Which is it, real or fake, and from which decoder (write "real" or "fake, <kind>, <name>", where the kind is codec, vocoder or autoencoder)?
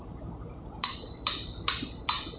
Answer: fake, vocoder, BigVGAN v2